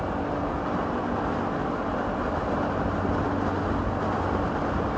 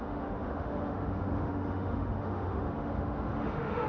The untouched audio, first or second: first